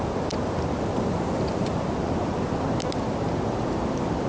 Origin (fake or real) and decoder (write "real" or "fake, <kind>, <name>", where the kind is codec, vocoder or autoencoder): real